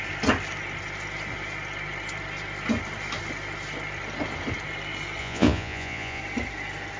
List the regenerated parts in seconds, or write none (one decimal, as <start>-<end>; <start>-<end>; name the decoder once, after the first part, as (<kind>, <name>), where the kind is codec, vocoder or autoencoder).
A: 5.2-6.2 (vocoder, Vocos)